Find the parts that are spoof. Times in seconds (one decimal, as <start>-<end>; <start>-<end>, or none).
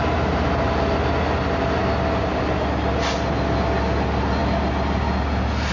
none